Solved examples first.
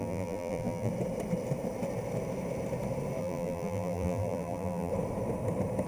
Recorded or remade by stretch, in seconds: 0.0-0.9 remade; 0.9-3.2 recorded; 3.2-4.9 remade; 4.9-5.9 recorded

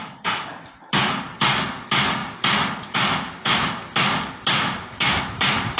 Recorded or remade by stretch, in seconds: 0.0-5.8 recorded